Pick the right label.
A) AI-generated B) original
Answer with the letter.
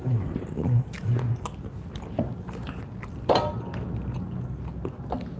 B